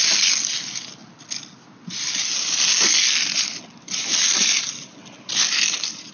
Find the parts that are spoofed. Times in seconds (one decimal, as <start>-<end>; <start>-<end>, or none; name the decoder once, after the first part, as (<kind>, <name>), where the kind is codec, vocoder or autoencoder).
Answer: none